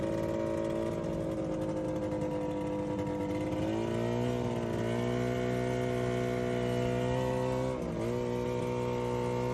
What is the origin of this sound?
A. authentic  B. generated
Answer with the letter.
A